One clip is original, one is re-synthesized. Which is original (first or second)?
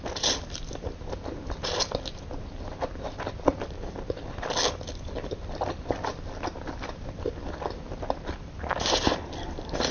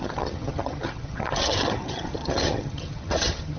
first